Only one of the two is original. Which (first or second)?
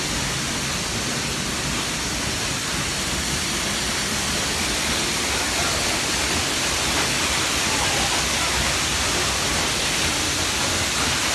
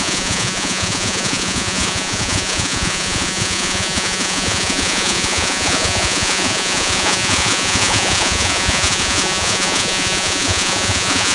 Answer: first